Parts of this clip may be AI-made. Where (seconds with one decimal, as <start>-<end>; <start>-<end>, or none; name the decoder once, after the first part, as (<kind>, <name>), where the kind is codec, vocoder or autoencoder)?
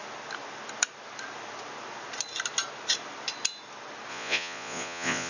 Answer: 4.1-5.3 (vocoder, Vocos)